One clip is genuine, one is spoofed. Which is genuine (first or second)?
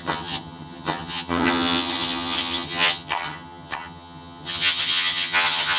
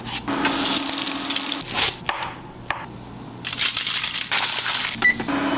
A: second